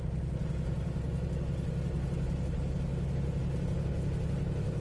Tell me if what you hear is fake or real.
real